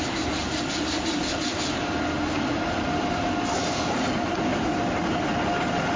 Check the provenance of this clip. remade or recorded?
recorded